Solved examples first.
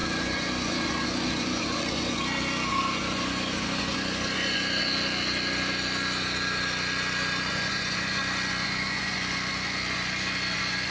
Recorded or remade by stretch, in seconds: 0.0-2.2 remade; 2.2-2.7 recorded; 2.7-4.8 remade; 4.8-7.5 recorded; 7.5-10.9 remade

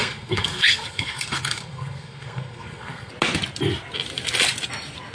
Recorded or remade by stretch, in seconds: 0.0-3.1 remade; 3.1-5.1 recorded

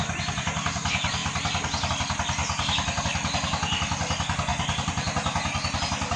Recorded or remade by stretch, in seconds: 0.0-6.2 recorded

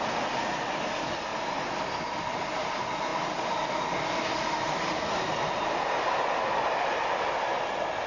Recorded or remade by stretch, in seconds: 0.0-8.1 recorded

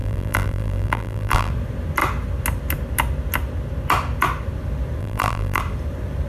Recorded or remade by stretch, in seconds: 0.0-1.5 remade; 1.5-5.0 recorded; 5.0-5.6 remade; 5.6-6.3 recorded

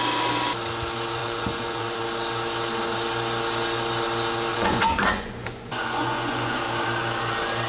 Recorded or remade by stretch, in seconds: 0.0-1.2 recorded; 1.2-2.0 remade; 2.0-4.5 recorded; 4.5-6.6 remade; 6.6-7.7 recorded

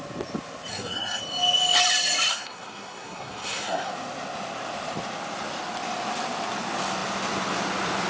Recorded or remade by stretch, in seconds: 0.0-0.7 recorded; 0.7-1.2 remade; 1.2-2.3 recorded; 2.3-3.9 remade; 3.9-8.1 recorded